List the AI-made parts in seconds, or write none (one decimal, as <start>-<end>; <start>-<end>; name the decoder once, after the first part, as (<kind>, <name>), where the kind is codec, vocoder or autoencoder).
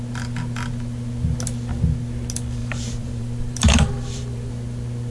2.6-4.5 (vocoder, BigVGAN v2)